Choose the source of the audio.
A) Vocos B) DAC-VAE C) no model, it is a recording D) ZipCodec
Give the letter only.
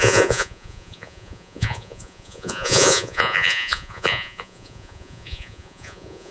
A